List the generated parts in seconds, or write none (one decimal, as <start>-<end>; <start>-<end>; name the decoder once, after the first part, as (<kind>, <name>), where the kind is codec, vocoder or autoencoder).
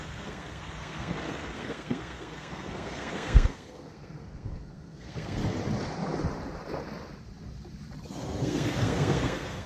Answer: 0.0-5.4 (codec, SNAC); 8.1-9.7